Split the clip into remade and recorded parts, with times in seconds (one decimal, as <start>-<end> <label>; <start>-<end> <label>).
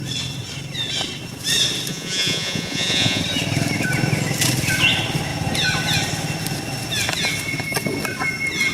0.0-1.9 recorded; 1.9-3.2 remade; 3.2-8.7 recorded